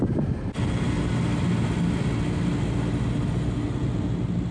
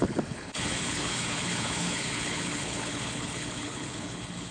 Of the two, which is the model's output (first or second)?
second